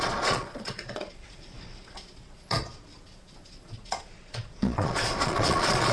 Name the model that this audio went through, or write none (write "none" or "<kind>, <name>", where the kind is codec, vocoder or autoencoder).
vocoder, Vocos